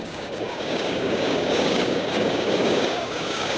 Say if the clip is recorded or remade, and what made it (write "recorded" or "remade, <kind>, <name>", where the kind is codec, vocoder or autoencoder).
remade, codec, DAC